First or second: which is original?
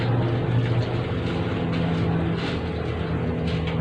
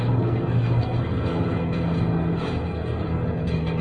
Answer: first